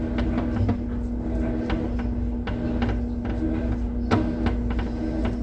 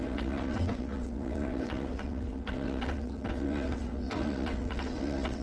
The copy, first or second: second